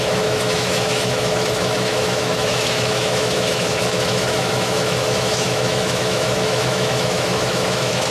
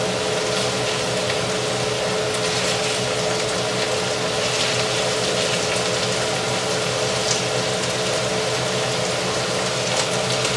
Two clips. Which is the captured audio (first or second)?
second